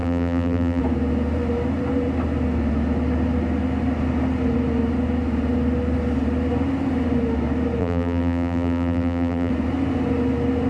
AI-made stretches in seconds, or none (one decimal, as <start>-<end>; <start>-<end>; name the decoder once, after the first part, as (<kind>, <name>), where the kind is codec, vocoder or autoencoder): 0.0-0.8 (vocoder, BigVGAN v2); 7.8-9.5